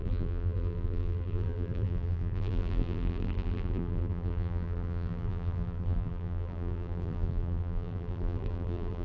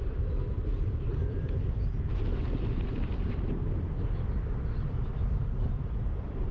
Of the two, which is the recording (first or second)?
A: second